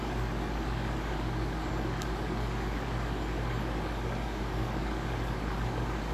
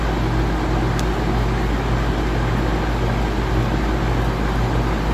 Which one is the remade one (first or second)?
first